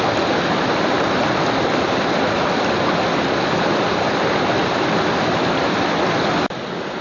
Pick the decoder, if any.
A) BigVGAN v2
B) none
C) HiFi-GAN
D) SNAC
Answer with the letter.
B